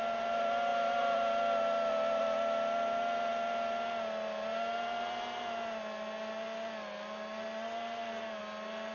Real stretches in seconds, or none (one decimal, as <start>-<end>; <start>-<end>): 0.0-8.9